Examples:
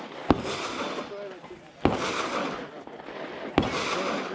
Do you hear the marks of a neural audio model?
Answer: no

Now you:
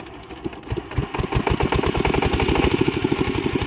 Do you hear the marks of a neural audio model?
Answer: no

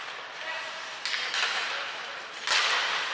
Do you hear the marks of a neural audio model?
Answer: no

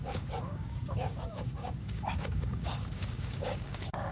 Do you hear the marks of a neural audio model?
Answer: yes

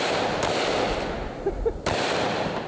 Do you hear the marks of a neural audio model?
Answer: no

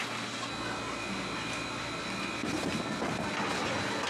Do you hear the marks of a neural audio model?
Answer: no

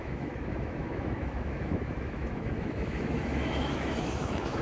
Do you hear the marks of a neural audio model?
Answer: yes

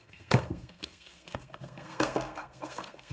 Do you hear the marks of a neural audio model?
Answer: yes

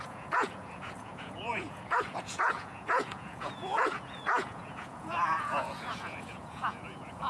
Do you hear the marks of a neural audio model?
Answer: yes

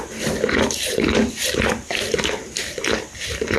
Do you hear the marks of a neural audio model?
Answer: no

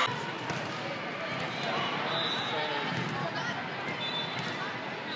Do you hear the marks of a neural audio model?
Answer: no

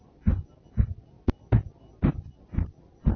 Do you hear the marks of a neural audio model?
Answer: no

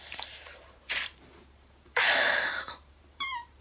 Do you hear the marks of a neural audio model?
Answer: yes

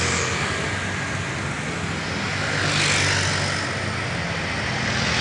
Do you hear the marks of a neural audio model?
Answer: no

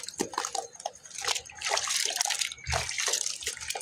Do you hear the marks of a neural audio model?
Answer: no